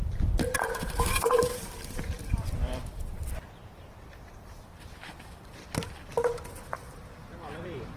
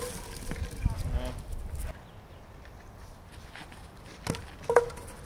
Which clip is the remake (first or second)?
first